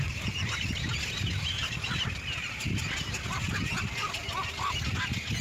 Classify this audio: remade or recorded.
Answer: recorded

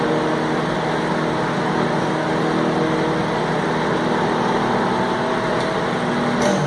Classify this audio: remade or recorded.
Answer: recorded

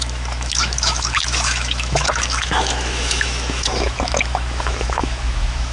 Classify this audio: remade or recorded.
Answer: remade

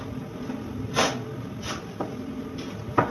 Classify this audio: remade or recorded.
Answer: recorded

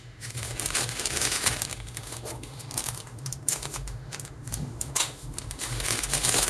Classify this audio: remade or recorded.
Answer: remade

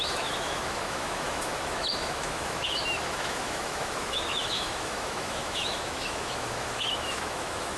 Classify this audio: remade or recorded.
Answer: remade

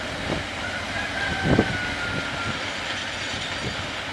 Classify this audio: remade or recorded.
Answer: recorded